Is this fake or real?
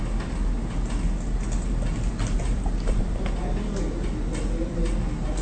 real